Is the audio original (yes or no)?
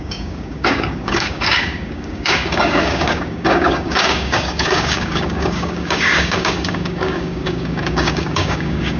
no